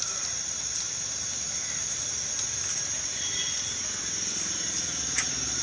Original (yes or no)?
yes